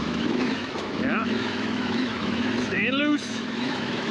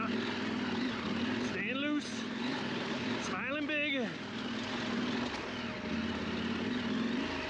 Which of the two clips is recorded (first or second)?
second